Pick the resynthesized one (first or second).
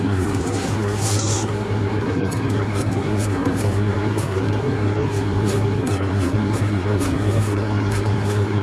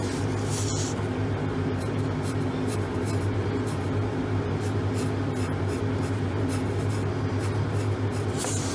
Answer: first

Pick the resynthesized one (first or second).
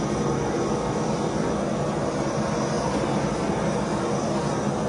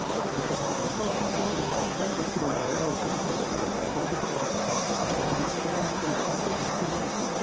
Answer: second